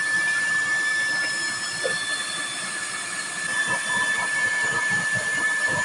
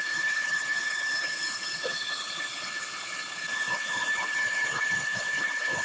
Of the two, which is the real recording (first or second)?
first